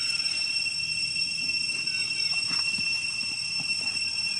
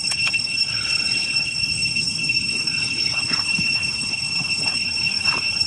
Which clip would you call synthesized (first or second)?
second